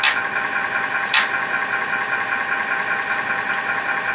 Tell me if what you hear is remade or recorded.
recorded